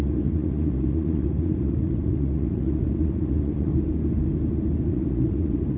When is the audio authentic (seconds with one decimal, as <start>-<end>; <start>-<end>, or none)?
3.7-4.9